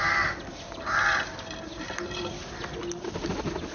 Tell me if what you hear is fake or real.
real